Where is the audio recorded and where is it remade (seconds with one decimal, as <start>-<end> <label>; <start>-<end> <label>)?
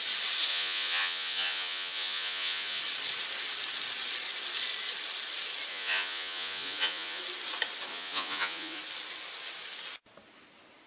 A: 0.0-0.5 recorded; 0.5-2.8 remade; 2.8-5.7 recorded; 5.7-7.2 remade; 7.2-7.9 recorded; 7.9-8.8 remade; 8.8-10.9 recorded